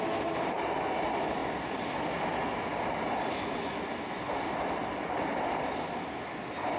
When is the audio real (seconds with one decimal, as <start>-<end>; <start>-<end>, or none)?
0.0-6.8